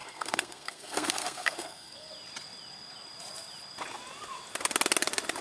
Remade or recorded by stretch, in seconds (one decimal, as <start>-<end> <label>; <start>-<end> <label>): 0.0-2.1 remade; 2.1-5.4 recorded